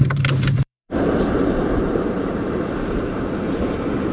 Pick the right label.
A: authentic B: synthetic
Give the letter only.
B